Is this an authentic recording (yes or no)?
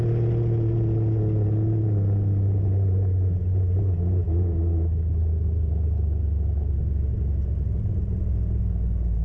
yes